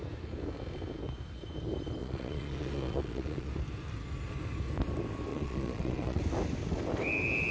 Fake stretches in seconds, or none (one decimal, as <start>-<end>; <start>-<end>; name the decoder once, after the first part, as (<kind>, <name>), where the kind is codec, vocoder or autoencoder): 2.0-3.5 (vocoder, Vocos); 5.3-6.2